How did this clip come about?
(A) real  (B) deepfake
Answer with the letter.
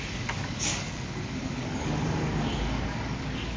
B